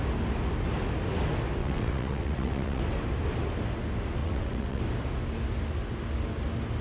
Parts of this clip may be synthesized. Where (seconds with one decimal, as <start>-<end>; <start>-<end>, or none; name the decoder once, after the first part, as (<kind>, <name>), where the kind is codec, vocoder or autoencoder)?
1.6-2.8 (vocoder, WaveNeXt); 4.2-4.8